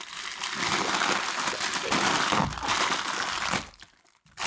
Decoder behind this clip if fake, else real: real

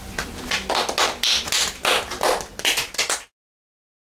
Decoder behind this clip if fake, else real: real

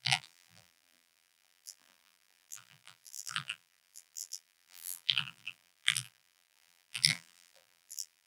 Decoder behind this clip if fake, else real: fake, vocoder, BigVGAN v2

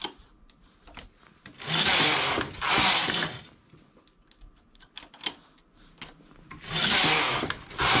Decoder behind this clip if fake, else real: real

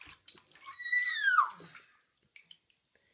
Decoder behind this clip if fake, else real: real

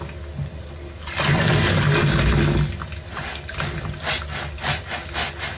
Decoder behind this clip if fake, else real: real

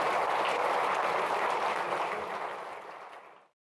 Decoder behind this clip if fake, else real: real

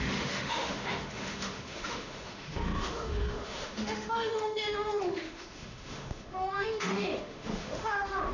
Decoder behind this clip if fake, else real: fake, autoencoder, DAC-VAE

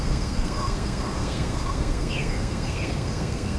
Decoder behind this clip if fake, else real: fake, codec, SNAC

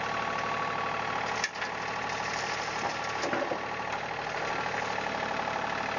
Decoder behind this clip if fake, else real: real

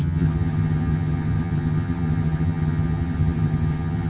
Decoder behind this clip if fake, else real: fake, vocoder, HiFi-GAN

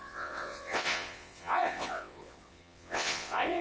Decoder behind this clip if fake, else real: fake, vocoder, WaveNeXt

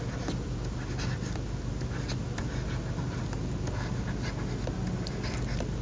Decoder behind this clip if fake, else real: real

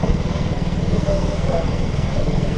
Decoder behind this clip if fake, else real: fake, codec, SNAC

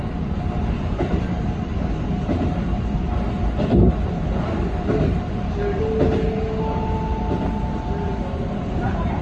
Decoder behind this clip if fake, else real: real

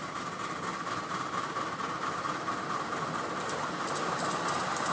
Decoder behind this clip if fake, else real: real